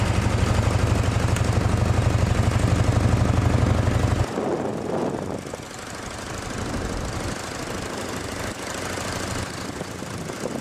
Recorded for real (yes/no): yes